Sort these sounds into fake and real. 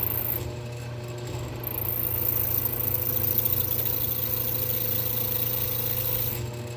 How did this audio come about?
real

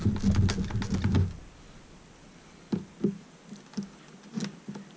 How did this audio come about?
real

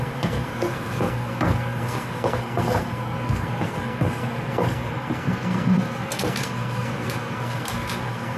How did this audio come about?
fake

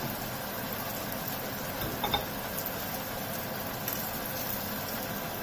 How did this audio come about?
real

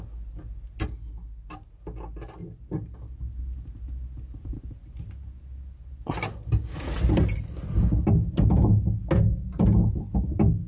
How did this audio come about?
real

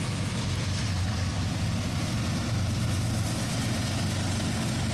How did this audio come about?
real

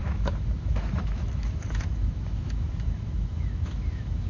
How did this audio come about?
fake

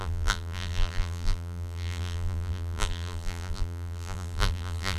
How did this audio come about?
fake